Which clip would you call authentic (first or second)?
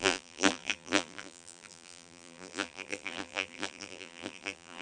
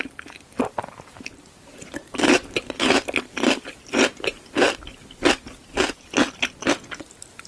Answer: second